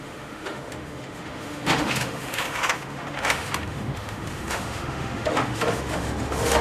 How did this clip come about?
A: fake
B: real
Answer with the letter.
A